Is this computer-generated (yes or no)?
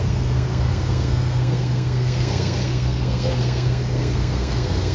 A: yes